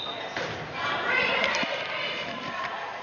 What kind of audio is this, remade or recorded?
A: remade